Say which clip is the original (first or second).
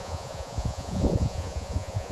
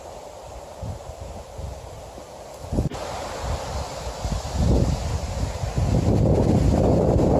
second